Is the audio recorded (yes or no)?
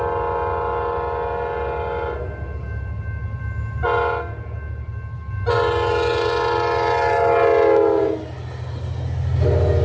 yes